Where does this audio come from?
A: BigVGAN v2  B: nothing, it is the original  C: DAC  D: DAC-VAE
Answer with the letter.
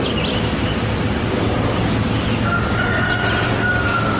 B